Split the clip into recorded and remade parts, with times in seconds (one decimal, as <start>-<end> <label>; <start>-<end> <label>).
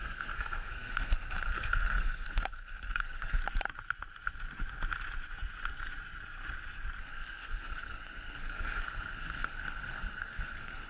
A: 0.0-3.4 remade; 3.4-7.0 recorded; 7.0-10.9 remade